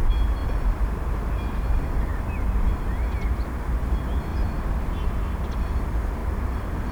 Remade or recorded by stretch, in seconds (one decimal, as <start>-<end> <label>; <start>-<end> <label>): 0.0-0.4 recorded; 0.4-1.3 remade; 1.3-4.3 recorded; 4.3-5.7 remade; 5.7-6.2 recorded; 6.2-6.9 remade